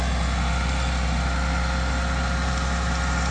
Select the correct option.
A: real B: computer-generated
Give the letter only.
A